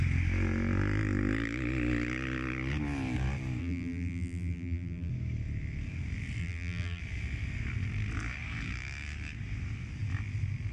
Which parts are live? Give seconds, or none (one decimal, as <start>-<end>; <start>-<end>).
0.0-3.6; 5.1-6.4; 7.0-10.7